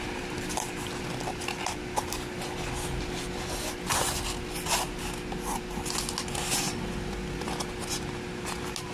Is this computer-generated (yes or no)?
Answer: no